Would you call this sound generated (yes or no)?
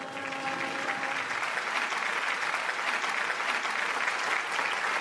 no